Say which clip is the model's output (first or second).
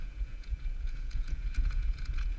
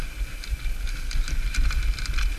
first